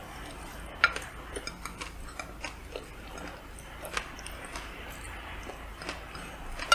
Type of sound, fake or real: real